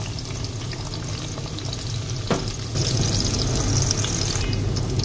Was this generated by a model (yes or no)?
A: no